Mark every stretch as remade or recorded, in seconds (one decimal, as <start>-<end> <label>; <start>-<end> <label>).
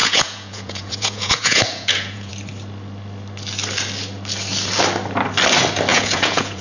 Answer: 0.0-2.3 remade; 2.3-5.9 recorded; 5.9-6.6 remade